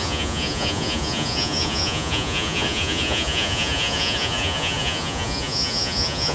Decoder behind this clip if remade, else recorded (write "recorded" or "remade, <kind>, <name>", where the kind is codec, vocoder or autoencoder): remade, vocoder, Vocos